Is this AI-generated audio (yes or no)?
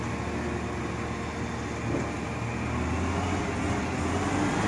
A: no